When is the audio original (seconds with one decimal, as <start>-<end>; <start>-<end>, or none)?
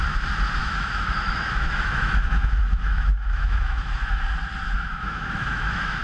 0.0-0.6; 4.2-4.9